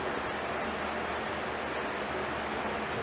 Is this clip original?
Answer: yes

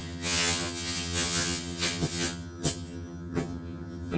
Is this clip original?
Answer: no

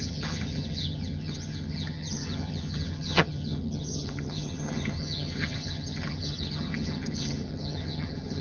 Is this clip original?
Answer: no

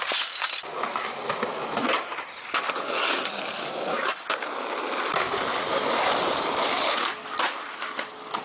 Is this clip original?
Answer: yes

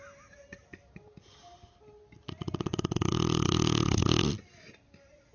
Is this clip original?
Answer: yes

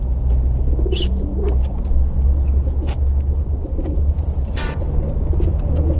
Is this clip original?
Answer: yes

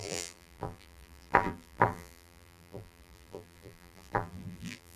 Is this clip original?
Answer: no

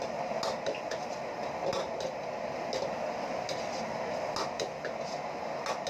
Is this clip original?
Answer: yes